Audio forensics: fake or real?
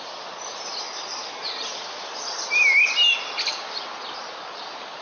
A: real